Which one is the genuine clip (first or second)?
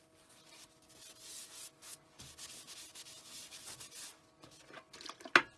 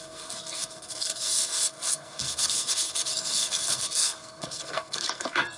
first